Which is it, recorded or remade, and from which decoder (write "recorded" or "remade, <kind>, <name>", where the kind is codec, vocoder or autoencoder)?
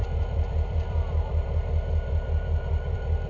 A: remade, vocoder, BigVGAN v2